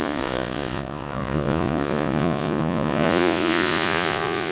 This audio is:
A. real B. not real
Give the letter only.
B